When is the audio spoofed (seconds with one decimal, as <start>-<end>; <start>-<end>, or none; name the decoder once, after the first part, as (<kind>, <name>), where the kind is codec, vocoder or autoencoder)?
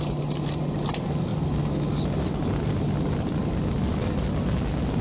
0.0-5.0 (vocoder, BigVGAN v2)